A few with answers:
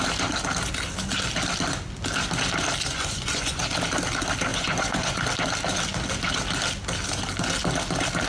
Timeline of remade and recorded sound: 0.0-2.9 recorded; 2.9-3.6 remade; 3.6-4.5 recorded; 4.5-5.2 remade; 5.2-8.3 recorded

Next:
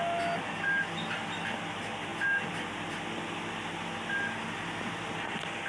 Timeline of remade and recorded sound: 0.0-5.7 recorded